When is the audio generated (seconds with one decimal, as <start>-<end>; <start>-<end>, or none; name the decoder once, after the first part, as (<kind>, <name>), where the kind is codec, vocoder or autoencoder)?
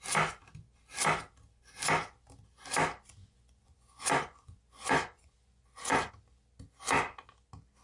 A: 3.2-6.1 (vocoder, Vocos)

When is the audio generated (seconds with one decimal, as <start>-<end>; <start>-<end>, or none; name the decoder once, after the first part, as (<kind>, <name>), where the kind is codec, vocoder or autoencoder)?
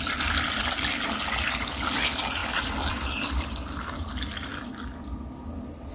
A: 2.4-3.5 (vocoder, BigVGAN v2)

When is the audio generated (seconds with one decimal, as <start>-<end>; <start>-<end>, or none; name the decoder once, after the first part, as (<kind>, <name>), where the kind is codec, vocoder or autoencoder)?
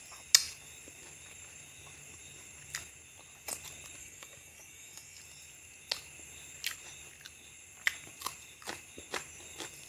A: 4.0-5.2 (codec, DAC)